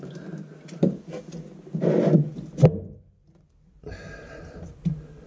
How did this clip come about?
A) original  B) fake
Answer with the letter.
A